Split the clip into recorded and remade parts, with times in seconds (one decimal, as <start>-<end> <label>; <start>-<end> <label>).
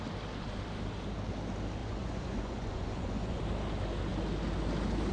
0.0-1.8 recorded; 1.8-3.4 remade; 3.4-5.1 recorded